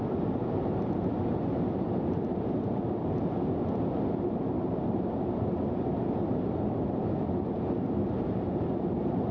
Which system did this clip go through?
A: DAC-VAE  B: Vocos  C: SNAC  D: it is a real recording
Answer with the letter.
D